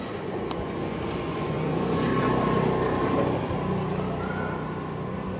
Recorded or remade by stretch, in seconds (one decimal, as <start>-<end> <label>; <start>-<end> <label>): 0.0-2.1 remade; 2.1-5.4 recorded